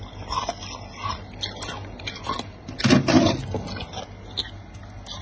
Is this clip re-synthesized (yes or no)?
no